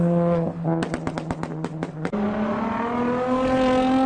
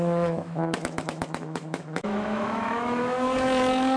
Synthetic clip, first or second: second